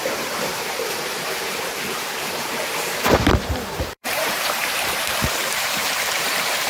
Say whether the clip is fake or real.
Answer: fake